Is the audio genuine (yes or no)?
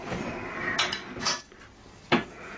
yes